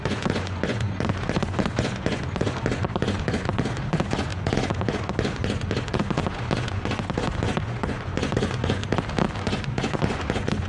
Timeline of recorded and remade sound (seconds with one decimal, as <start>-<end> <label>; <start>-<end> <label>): 0.0-8.8 remade; 8.8-9.4 recorded; 9.4-10.7 remade